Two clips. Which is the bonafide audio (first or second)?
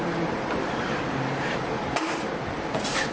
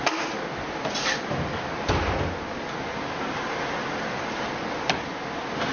second